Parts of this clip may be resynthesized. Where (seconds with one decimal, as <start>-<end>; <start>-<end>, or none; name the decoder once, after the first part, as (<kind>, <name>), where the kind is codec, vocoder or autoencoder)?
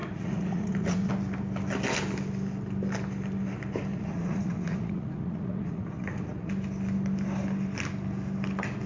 0.0-1.1 (vocoder, Vocos); 3.9-6.5